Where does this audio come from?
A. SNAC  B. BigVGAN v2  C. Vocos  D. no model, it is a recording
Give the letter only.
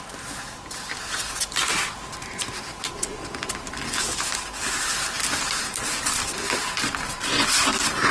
D